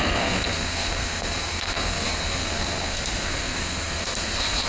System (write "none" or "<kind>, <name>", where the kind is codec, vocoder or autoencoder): codec, SNAC